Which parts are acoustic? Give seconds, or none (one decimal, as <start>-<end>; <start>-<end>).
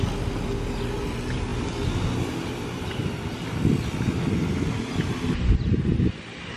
0.0-6.6